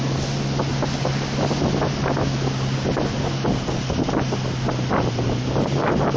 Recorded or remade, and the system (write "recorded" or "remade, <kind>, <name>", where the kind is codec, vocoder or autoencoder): recorded